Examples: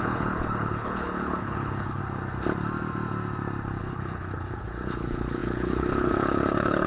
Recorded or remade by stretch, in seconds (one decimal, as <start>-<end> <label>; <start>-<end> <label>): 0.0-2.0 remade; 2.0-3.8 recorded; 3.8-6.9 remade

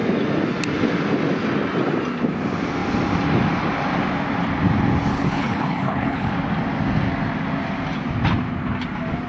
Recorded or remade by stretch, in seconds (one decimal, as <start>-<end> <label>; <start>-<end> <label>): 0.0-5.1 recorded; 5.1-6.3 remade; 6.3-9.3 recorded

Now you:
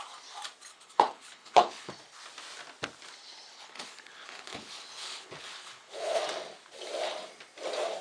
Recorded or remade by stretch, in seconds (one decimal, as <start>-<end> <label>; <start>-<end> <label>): 0.0-0.7 recorded; 0.7-1.9 remade; 1.9-3.5 recorded; 3.5-6.2 remade; 6.2-8.0 recorded